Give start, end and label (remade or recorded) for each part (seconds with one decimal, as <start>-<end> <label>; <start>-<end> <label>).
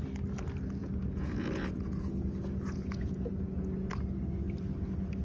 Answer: 0.0-0.8 recorded; 0.8-3.9 remade; 3.9-5.2 recorded